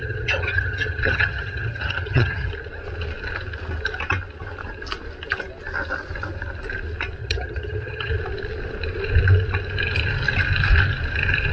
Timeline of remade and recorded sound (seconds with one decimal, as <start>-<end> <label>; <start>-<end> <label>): 0.0-2.5 remade; 2.5-7.2 recorded; 7.2-8.1 remade; 8.1-11.5 recorded